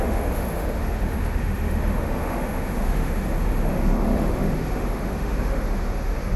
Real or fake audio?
fake